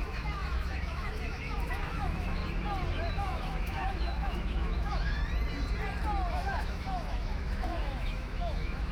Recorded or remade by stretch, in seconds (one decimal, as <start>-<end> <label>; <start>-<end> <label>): 0.0-2.4 remade; 2.4-3.1 recorded; 3.1-5.2 remade; 5.2-6.3 recorded; 6.3-8.9 remade

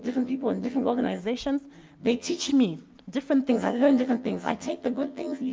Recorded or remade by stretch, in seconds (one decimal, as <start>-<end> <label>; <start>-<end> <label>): 0.0-1.2 remade; 1.2-2.0 recorded; 2.0-2.5 remade; 2.5-3.5 recorded; 3.5-5.5 remade